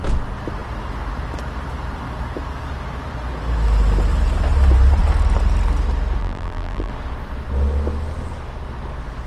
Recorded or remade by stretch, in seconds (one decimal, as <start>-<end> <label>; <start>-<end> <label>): 0.0-6.2 recorded; 6.2-6.9 remade; 6.9-9.3 recorded